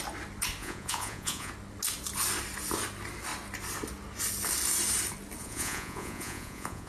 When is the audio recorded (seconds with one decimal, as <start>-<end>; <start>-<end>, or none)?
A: 0.0-0.6; 1.5-5.4